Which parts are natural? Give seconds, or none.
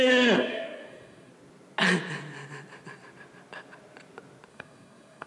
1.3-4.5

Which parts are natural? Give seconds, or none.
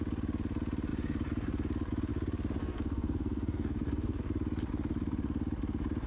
0.0-2.6; 4.2-6.1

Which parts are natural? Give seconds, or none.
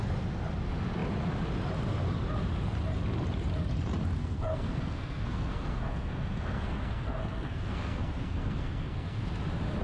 0.0-4.2; 9.3-9.8